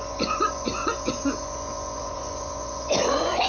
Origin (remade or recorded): remade